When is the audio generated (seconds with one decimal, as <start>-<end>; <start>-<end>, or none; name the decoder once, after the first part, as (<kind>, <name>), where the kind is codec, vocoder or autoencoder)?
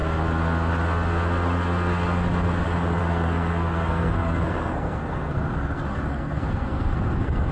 3.0-7.5 (codec, SNAC)